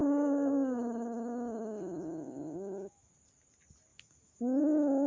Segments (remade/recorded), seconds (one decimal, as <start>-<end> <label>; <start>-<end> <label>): 0.0-3.1 remade; 3.1-3.9 recorded; 3.9-4.6 remade; 4.6-5.1 recorded